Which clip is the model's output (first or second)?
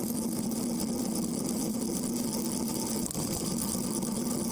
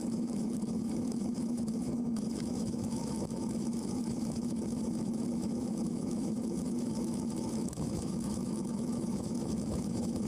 second